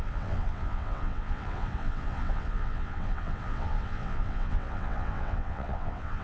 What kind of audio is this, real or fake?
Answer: fake